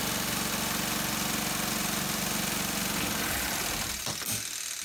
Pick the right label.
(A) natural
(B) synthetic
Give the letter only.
A